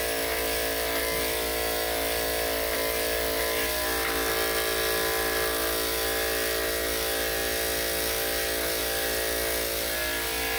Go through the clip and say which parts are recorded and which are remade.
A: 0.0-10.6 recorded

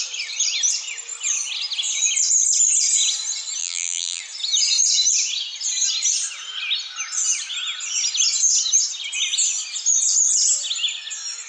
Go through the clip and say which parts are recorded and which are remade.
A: 0.0-3.6 recorded; 3.6-4.2 remade; 4.2-11.5 recorded

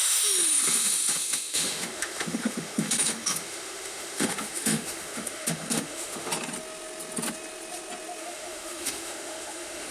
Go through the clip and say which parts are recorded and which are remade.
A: 0.0-6.3 remade; 6.3-8.2 recorded; 8.2-9.9 remade

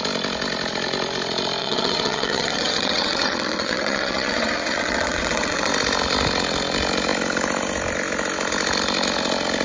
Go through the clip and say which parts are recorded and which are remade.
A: 0.0-1.6 recorded; 1.6-5.7 remade; 5.7-9.6 recorded

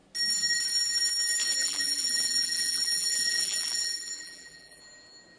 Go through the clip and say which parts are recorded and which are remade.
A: 0.0-1.6 recorded; 1.6-4.8 remade; 4.8-5.4 recorded